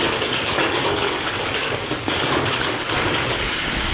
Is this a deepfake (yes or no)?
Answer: yes